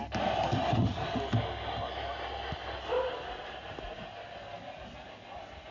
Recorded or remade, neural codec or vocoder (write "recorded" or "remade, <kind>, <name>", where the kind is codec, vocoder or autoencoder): recorded